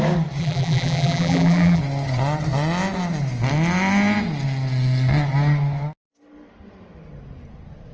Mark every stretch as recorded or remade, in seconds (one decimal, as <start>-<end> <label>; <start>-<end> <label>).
0.0-0.4 recorded; 0.4-1.8 remade; 1.8-7.9 recorded